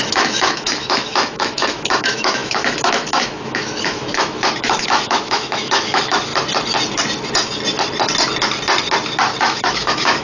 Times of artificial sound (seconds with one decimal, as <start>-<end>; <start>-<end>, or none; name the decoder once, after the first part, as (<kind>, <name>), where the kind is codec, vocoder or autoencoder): 0.0-6.3 (autoencoder, DAC-VAE); 9.4-10.2